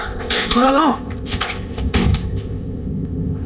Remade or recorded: remade